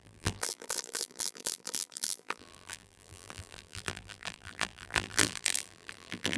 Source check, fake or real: fake